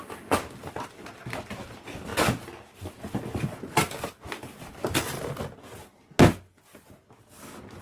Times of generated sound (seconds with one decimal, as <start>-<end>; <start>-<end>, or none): none

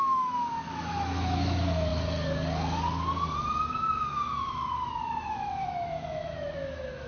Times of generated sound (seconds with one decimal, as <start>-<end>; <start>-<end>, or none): 0.0-1.9; 3.7-7.1

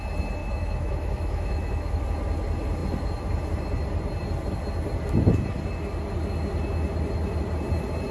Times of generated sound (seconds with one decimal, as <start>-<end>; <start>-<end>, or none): 0.4-2.0

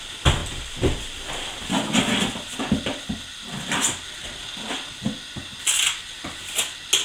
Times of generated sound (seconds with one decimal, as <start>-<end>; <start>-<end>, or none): none

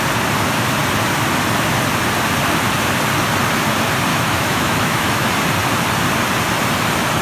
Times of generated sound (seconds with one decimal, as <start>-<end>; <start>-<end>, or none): 4.1-5.3